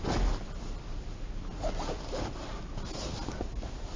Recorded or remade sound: recorded